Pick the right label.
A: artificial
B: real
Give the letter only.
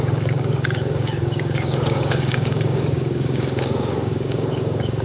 A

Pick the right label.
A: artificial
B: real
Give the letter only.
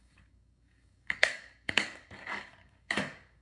A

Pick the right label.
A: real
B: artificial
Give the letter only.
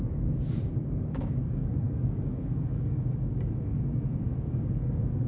B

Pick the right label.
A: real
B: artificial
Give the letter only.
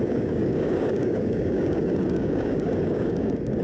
B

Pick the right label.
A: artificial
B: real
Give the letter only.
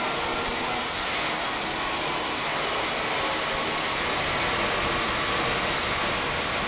B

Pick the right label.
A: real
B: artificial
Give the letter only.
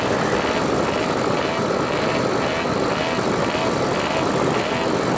A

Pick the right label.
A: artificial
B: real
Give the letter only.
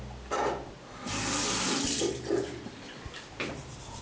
B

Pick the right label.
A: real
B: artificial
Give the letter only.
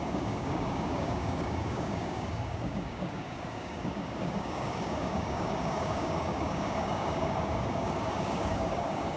B